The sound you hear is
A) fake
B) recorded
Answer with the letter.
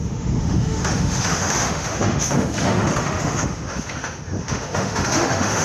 A